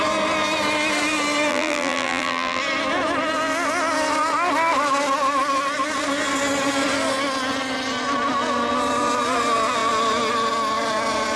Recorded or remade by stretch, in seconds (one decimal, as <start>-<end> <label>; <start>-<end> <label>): 0.0-1.5 recorded; 1.5-2.6 remade; 2.6-11.4 recorded